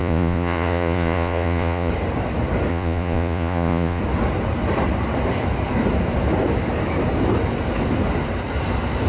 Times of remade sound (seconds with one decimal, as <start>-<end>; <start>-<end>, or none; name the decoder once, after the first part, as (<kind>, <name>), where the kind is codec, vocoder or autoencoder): 0.0-1.9 (vocoder, Vocos); 2.7-4.0